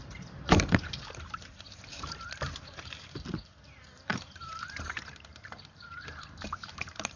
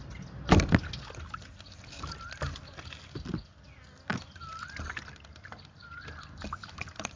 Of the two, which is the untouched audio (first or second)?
second